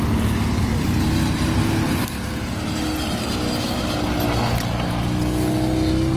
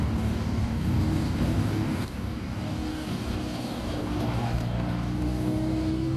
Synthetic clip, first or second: second